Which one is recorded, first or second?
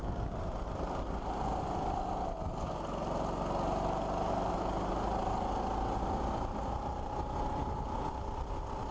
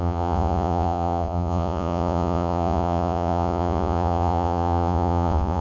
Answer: first